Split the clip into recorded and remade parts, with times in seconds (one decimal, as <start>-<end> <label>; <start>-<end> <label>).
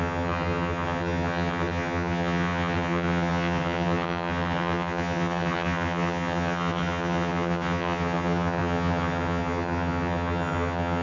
0.0-11.0 remade